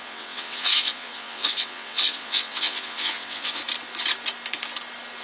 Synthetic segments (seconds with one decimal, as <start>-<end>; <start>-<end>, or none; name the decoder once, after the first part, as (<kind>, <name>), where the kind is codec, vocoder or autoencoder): 0.0-3.6 (vocoder, WaveNeXt)